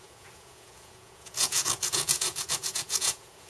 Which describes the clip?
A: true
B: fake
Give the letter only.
B